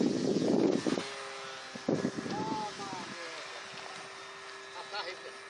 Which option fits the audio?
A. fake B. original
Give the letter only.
B